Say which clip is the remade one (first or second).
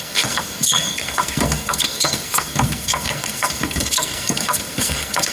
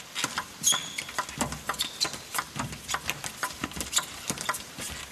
first